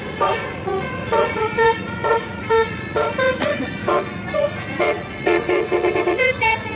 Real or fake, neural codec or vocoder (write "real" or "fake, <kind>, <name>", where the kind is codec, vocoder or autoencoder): fake, vocoder, Vocos